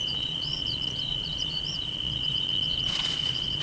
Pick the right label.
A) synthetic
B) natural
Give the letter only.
A